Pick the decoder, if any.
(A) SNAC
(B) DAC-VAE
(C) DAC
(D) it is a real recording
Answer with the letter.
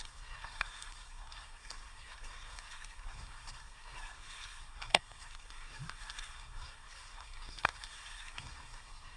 A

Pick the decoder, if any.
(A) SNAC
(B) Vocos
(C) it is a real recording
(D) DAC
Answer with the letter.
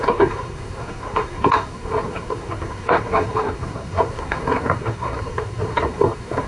A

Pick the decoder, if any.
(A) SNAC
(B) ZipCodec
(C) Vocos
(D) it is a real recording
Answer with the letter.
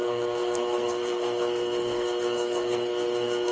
A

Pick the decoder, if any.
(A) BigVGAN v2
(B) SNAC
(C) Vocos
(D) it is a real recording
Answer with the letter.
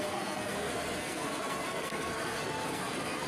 B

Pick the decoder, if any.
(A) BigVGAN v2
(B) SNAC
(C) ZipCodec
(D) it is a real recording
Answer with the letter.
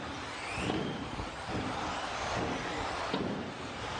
D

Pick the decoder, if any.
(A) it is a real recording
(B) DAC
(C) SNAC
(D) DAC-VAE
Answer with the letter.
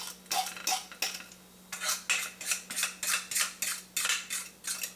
A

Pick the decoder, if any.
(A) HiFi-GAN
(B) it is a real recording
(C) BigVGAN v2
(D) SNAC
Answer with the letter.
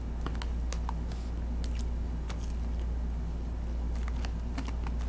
B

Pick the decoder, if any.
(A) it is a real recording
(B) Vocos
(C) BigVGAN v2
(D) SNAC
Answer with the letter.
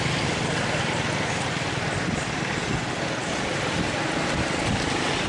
A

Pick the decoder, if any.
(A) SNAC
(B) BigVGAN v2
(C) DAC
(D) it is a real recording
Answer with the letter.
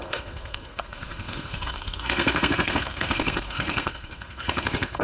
A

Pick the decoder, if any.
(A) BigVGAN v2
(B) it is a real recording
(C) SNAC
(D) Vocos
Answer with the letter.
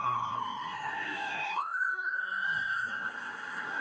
C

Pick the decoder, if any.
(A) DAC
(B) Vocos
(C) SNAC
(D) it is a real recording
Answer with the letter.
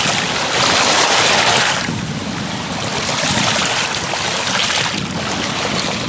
D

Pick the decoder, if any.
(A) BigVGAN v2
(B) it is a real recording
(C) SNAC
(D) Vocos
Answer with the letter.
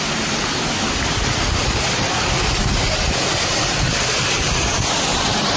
B